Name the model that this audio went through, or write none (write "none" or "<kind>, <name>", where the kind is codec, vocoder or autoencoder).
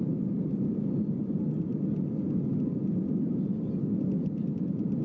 none